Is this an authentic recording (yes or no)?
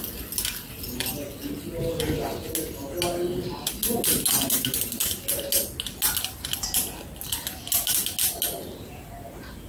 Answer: yes